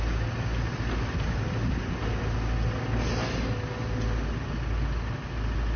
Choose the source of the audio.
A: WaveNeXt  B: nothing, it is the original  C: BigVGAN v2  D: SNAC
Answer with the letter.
B